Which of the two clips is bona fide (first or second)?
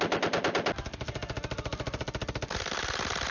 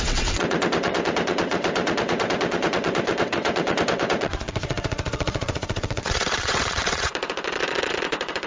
first